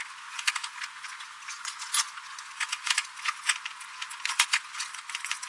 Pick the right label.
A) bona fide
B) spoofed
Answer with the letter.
B